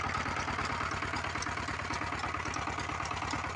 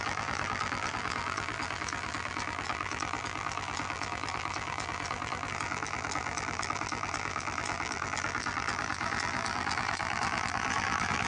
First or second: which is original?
first